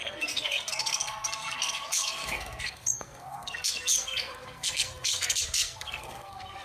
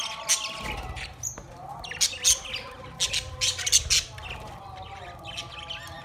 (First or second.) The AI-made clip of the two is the first